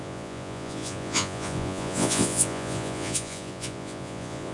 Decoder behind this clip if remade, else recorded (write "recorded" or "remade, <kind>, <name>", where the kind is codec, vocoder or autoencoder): remade, vocoder, Vocos